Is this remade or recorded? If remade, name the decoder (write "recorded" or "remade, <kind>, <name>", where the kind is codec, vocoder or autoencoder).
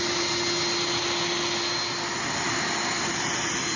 recorded